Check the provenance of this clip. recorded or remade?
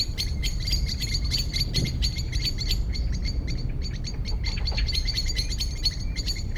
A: remade